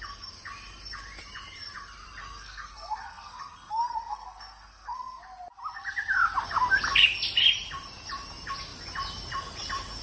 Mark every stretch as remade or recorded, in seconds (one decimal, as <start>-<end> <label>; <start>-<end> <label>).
0.0-2.2 recorded; 2.2-5.2 remade; 5.2-10.0 recorded